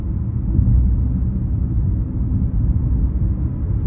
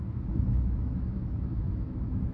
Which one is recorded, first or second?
first